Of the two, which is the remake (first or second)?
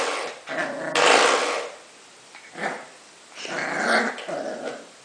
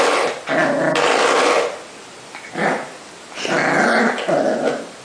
first